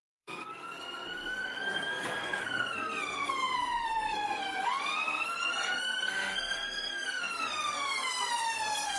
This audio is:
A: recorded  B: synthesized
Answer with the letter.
B